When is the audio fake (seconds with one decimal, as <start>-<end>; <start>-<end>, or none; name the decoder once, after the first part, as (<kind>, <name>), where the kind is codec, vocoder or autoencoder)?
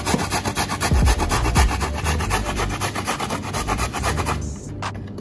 2.4-4.2 (vocoder, BigVGAN v2)